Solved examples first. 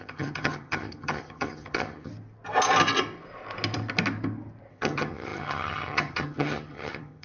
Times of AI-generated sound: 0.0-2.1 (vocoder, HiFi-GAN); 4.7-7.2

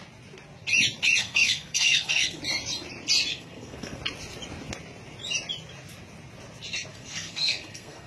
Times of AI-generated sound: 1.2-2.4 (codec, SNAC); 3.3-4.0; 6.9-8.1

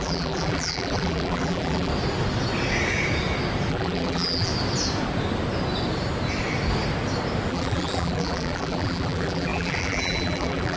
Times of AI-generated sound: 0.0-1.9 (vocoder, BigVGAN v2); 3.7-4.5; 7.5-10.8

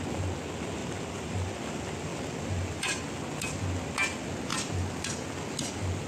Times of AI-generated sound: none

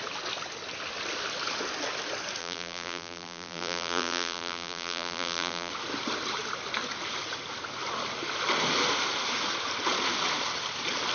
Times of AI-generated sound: 2.4-5.7 (vocoder, BigVGAN v2)

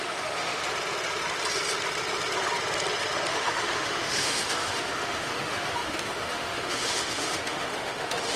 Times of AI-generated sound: 0.0-0.6 (autoencoder, DAC-VAE); 3.3-8.4